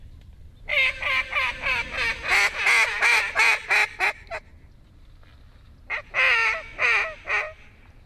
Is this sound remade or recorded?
recorded